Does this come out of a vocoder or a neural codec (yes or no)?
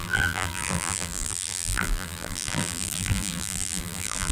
yes